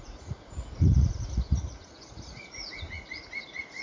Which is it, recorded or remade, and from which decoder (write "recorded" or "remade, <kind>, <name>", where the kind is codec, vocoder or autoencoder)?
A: remade, vocoder, Vocos